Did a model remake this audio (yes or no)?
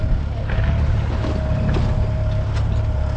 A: no